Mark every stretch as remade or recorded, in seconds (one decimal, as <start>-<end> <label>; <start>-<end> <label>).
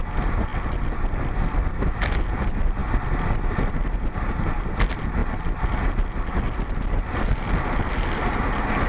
0.0-8.9 recorded